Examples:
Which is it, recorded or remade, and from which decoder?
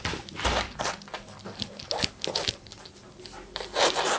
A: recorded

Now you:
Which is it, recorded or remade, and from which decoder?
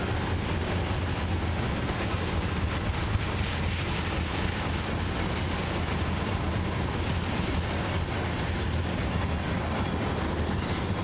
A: recorded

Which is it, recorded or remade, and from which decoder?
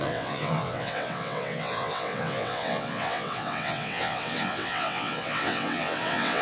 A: remade, vocoder, WaveNeXt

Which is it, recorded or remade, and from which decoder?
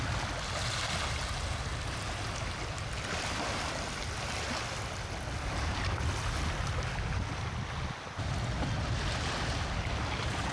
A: recorded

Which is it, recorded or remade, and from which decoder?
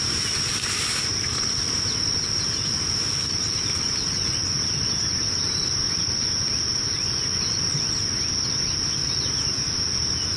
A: recorded